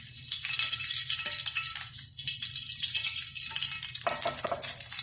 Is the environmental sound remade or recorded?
recorded